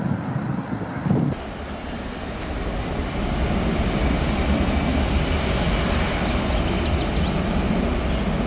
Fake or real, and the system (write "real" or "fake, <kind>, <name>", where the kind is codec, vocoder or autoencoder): real